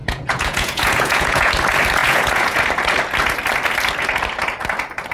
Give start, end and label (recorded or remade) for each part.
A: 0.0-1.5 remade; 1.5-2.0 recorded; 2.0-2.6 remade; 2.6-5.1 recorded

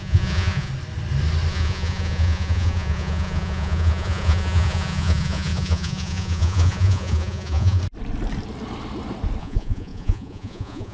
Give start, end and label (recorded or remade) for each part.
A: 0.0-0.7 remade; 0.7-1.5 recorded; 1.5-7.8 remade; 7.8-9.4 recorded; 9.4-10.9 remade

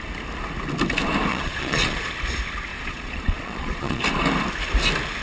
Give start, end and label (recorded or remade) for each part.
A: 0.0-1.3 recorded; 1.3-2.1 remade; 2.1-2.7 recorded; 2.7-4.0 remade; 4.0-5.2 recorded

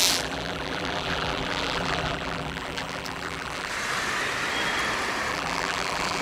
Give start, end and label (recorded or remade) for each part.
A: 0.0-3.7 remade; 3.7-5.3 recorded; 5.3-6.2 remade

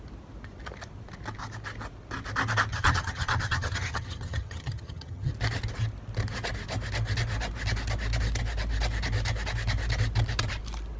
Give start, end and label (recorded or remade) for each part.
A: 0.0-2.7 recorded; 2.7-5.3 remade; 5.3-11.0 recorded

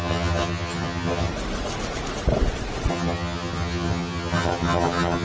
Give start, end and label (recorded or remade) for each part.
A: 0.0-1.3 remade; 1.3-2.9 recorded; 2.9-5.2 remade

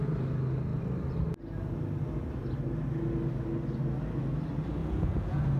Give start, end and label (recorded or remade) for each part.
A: 0.0-4.8 recorded; 4.8-5.6 remade